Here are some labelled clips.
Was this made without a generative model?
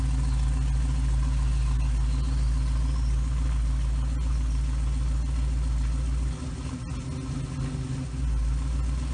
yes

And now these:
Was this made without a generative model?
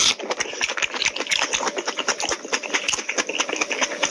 yes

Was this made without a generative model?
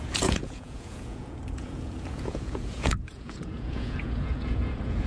no